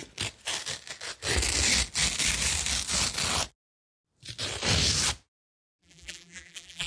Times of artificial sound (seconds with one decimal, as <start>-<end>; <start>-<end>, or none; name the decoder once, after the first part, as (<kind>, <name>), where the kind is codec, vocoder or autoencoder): 5.8-6.9 (vocoder, BigVGAN v2)